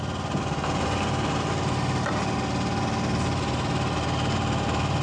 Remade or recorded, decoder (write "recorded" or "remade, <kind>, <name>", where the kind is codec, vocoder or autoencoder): recorded